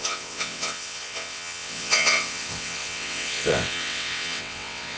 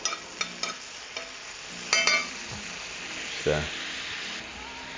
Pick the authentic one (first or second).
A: second